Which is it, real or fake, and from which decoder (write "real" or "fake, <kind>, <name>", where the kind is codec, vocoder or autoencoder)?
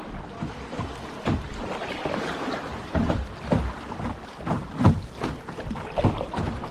real